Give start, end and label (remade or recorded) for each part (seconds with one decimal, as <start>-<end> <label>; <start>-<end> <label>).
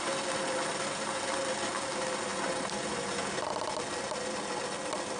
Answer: 0.0-5.2 recorded